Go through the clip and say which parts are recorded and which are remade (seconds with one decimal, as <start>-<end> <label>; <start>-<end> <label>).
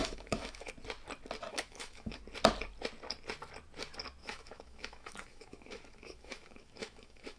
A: 0.0-0.7 remade; 0.7-1.5 recorded; 1.5-2.2 remade; 2.2-4.2 recorded; 4.2-7.4 remade